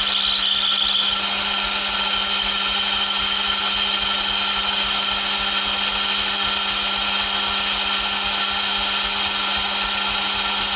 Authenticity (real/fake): real